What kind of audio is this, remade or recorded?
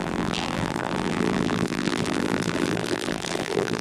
remade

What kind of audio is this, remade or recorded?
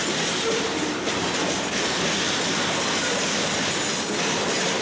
recorded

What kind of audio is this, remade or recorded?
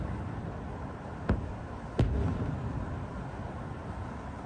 remade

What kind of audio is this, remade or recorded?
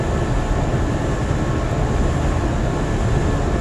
recorded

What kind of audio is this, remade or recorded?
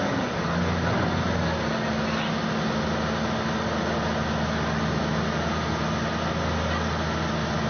recorded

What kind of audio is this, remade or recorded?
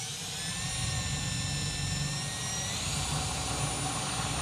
recorded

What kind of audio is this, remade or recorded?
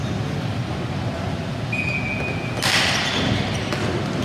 recorded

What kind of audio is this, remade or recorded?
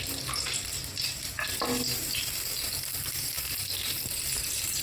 recorded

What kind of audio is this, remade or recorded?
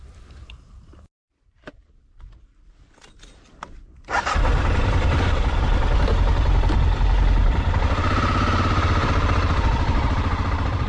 remade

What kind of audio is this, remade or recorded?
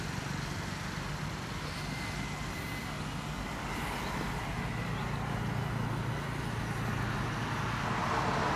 recorded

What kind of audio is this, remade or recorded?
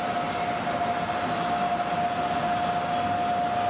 recorded